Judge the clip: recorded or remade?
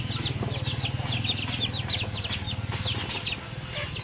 recorded